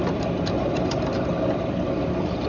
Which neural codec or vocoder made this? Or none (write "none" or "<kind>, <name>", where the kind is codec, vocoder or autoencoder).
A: none